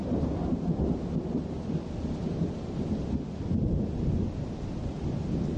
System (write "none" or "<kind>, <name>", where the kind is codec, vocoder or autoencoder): none